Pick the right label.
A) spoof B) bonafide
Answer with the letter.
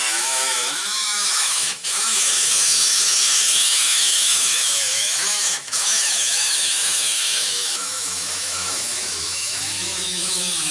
A